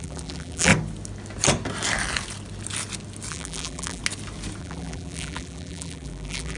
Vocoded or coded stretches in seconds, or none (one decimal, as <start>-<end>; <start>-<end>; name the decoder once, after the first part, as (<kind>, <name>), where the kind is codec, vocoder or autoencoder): 0.0-0.7 (vocoder, BigVGAN v2); 3.3-4.0; 4.6-6.6